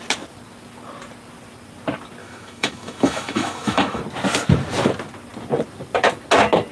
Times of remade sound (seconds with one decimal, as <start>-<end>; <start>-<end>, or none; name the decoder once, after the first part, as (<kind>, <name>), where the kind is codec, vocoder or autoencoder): 2.2-4.0 (autoencoder, DAC-VAE)